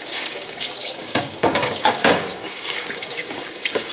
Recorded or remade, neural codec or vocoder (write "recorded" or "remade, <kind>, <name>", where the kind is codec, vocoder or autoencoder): remade, codec, DAC